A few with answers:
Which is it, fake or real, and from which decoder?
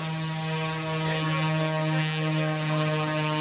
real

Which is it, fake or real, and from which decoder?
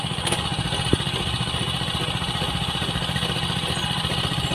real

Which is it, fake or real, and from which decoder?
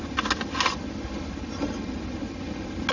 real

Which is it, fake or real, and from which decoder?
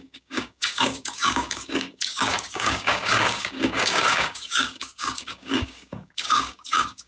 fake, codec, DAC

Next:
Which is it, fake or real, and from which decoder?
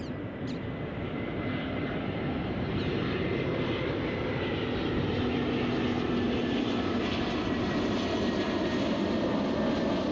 real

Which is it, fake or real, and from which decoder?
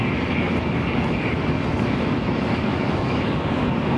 fake, codec, DAC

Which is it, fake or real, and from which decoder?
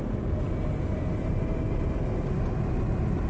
real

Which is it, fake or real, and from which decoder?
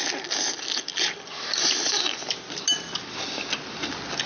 real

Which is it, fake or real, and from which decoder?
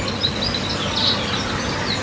real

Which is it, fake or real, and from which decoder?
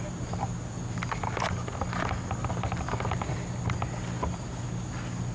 real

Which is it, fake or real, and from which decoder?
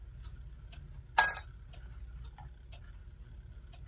real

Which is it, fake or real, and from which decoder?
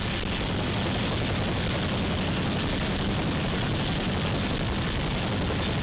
real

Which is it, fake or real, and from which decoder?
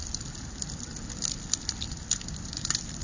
real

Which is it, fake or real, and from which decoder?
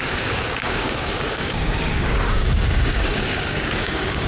fake, codec, DAC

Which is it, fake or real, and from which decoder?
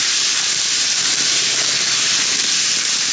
real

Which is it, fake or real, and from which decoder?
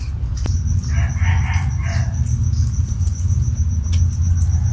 real